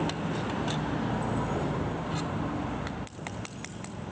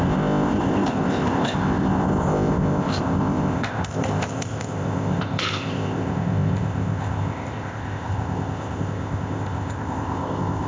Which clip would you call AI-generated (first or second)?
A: second